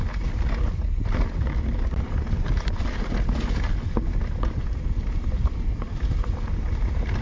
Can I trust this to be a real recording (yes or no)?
yes